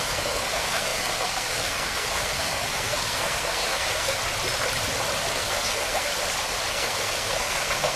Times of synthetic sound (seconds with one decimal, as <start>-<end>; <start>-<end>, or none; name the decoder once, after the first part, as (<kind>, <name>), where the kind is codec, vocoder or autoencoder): 0.0-4.2 (codec, SNAC); 5.3-6.1; 6.7-8.0